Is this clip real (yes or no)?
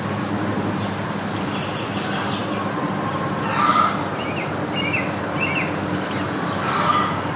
yes